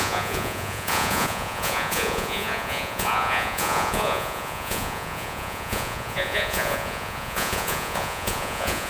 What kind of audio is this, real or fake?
fake